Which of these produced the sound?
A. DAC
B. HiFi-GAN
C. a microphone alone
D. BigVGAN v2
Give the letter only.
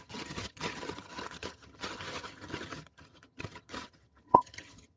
B